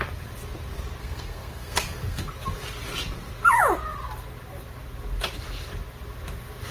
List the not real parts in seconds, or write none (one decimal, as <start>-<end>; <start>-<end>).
1.0-2.2